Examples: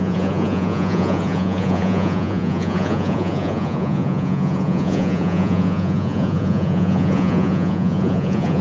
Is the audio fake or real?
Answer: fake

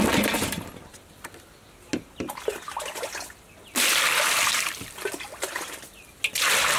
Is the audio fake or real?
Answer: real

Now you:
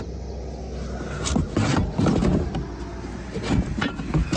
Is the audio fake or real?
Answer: real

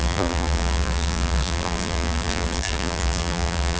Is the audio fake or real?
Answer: fake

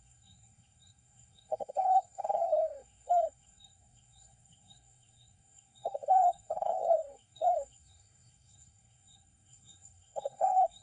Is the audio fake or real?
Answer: fake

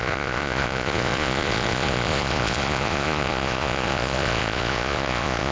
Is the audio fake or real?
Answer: fake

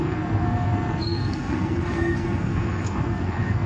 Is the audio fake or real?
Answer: fake